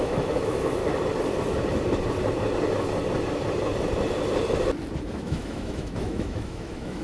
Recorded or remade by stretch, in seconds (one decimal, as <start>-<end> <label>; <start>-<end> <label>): 0.0-0.8 remade; 0.8-5.0 recorded; 5.0-7.0 remade